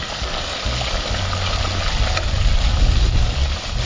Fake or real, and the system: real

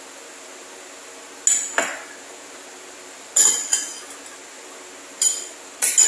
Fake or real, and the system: real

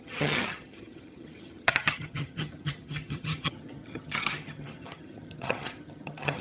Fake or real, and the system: fake, vocoder, HiFi-GAN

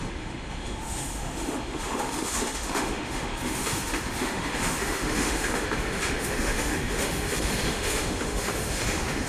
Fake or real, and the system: fake, autoencoder, DAC-VAE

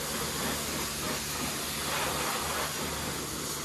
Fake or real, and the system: real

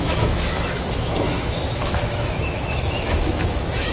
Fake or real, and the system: fake, autoencoder, DAC-VAE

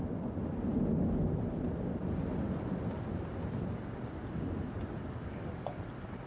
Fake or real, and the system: real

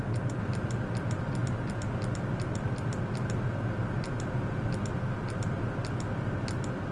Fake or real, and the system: real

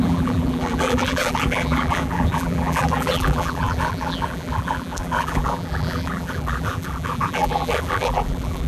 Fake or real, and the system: fake, vocoder, BigVGAN v2